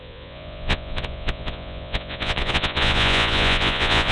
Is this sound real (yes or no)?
no